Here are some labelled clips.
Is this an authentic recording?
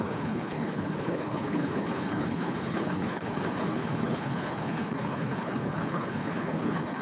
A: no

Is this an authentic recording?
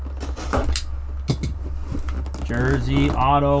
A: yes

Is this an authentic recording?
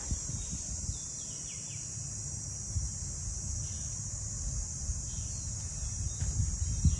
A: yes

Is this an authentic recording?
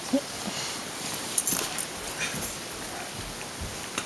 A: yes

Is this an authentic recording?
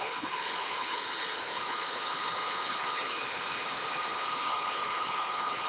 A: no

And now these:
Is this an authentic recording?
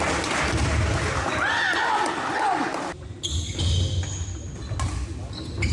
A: yes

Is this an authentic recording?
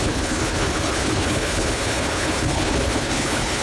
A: no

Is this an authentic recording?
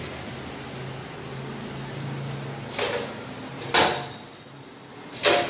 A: yes